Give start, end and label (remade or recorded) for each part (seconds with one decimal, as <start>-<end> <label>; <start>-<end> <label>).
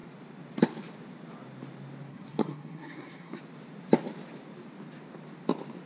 0.0-2.1 recorded; 2.1-3.4 remade; 3.4-5.8 recorded